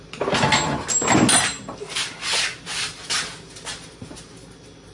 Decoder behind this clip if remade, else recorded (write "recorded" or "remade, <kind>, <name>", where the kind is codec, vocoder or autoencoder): recorded